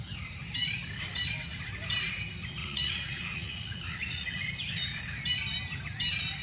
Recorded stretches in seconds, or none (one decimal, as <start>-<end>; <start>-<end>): 0.0-2.6; 4.5-6.4